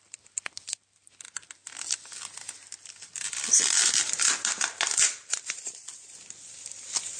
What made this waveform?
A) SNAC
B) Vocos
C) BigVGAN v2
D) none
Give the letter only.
D